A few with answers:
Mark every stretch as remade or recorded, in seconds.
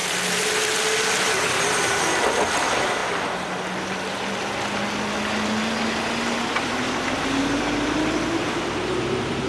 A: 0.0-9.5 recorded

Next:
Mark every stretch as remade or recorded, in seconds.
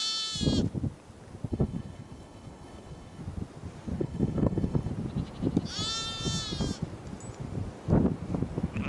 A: 0.0-1.5 recorded; 1.5-3.2 remade; 3.2-4.0 recorded; 4.0-4.9 remade; 4.9-8.9 recorded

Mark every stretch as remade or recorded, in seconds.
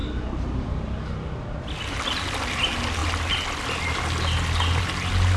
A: 0.0-5.4 recorded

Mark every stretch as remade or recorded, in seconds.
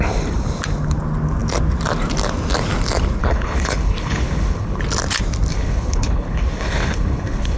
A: 0.0-3.2 recorded; 3.2-4.8 remade; 4.8-5.5 recorded; 5.5-7.6 remade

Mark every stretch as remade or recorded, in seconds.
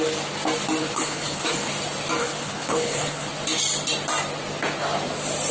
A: 0.0-0.8 recorded; 0.8-1.7 remade; 1.7-2.2 recorded; 2.2-3.3 remade; 3.3-5.5 recorded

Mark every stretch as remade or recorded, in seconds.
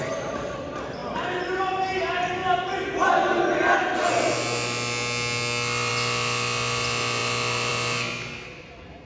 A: 0.0-9.1 recorded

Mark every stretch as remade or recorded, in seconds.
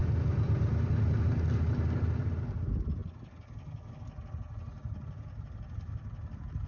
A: 0.0-6.7 recorded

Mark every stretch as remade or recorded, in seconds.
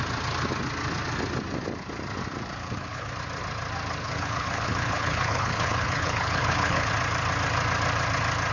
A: 0.0-2.6 recorded; 2.6-3.1 remade; 3.1-4.0 recorded; 4.0-6.9 remade; 6.9-8.5 recorded